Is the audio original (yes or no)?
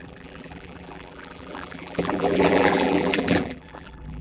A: no